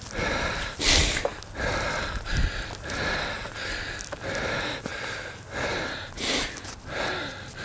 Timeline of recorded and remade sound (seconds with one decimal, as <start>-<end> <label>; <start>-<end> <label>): 0.0-7.6 recorded